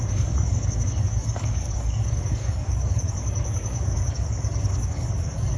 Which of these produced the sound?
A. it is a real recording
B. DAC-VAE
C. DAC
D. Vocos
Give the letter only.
C